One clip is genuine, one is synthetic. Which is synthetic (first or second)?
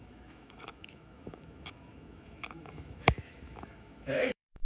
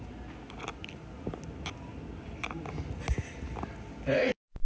first